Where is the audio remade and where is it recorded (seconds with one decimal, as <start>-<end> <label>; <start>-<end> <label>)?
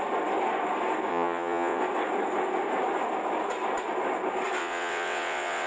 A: 0.0-1.1 recorded; 1.1-1.8 remade; 1.8-4.6 recorded; 4.6-5.7 remade